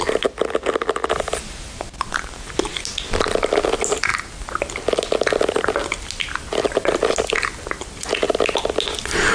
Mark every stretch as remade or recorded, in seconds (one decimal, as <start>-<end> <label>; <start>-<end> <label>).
0.0-9.3 recorded